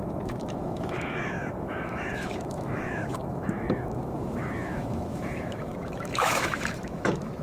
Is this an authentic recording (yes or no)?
no